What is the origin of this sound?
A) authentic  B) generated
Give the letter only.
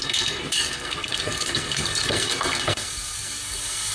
B